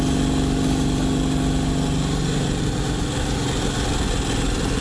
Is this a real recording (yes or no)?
yes